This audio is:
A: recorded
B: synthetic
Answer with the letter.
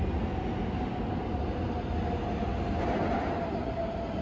A